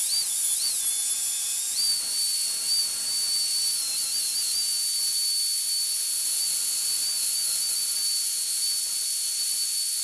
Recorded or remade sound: recorded